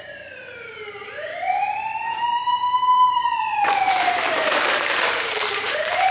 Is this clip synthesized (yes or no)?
yes